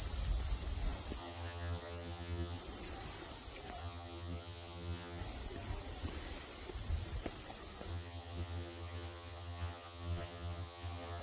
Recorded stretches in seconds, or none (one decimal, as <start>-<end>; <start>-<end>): 0.0-1.2; 2.6-3.8; 5.2-7.9